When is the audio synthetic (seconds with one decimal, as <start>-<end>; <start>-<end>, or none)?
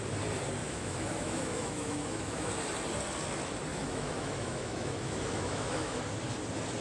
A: 0.6-2.5; 3.7-6.0